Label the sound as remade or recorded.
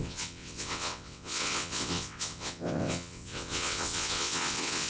remade